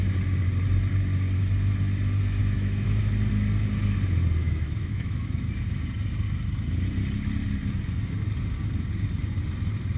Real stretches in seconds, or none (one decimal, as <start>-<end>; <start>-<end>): 0.0-2.4; 3.0-4.4; 5.5-10.0